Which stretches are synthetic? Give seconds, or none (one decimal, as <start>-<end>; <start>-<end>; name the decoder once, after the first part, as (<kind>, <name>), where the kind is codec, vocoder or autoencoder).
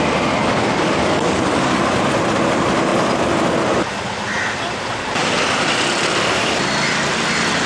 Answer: 0.4-1.8 (codec, DAC)